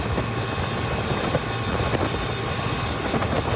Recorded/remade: recorded